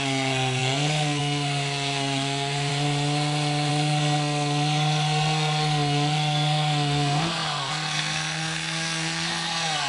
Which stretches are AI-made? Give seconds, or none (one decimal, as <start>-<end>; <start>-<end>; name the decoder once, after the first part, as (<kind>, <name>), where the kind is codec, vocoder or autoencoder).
0.0-2.7 (codec, SNAC); 3.7-9.9